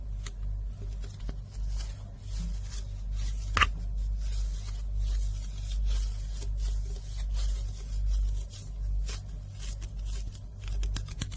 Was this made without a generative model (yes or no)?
yes